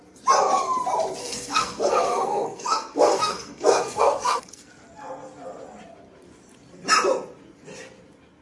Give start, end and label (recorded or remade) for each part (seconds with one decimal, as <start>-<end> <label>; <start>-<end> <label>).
0.0-1.2 recorded; 1.2-4.7 remade; 4.7-8.4 recorded

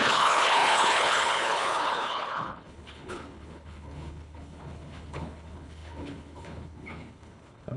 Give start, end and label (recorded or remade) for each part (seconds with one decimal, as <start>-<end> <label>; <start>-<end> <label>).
0.0-7.8 remade